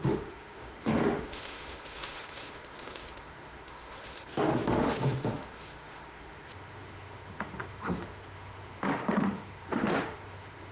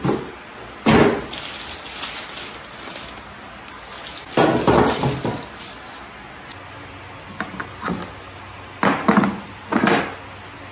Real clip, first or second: second